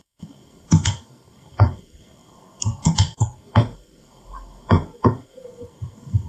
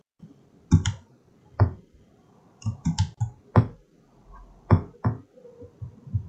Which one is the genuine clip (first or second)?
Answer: second